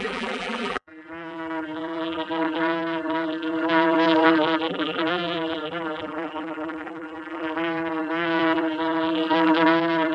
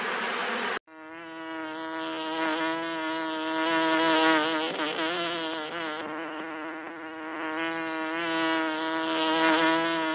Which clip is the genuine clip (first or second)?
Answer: second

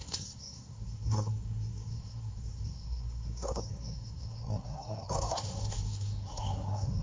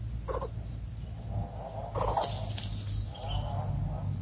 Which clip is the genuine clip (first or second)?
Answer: second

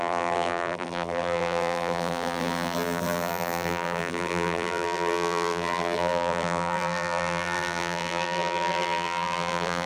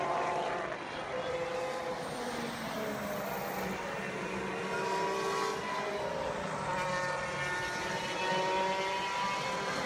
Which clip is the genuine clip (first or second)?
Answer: second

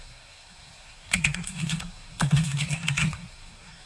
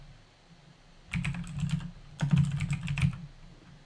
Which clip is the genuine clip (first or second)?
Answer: second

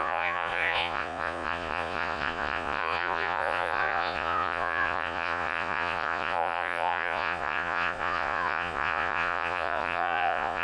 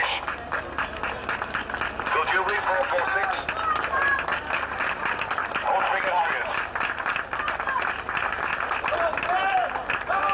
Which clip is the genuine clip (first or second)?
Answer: second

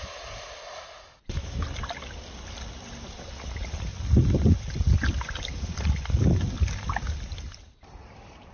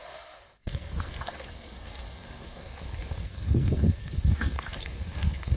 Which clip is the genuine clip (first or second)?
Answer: first